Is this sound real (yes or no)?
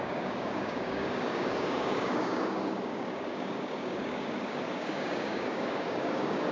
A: no